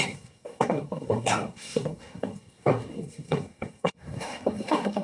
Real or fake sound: fake